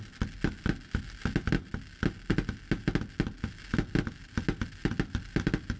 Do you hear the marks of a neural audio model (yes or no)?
no